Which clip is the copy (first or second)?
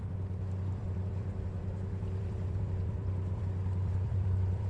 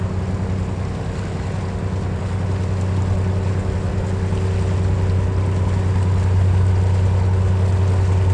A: first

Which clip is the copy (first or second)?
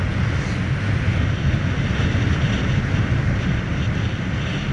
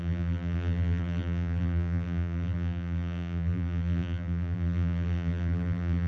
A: second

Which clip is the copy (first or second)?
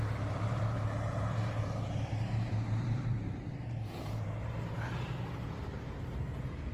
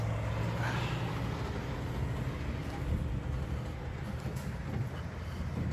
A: first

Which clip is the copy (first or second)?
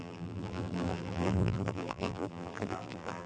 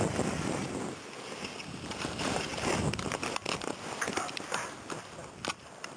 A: first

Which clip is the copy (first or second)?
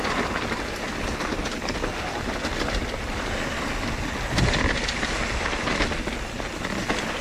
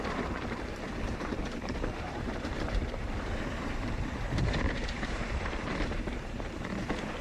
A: second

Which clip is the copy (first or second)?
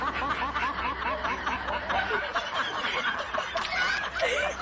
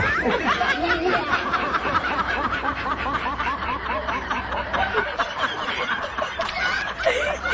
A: second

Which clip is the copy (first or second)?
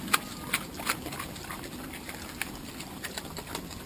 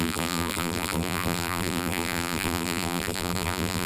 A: second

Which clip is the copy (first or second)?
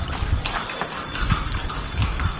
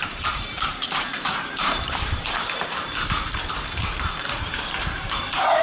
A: second